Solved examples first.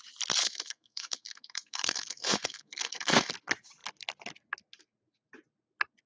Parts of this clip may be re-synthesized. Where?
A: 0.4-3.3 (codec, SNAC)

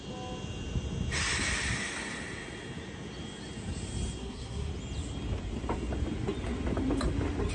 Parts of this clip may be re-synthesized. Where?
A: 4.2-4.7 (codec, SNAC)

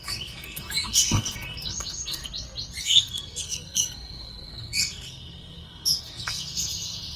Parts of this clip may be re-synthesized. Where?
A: 0.0-2.2 (codec, SNAC); 2.8-7.2